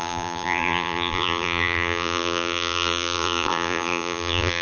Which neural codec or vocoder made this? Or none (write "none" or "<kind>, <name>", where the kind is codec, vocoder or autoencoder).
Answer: vocoder, BigVGAN v2